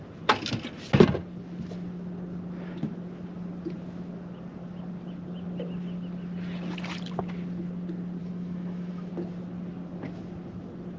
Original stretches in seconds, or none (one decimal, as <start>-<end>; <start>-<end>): 0.0-8.2; 9.1-11.0